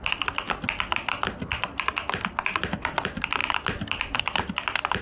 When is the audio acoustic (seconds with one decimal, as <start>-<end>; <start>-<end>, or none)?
0.0-5.0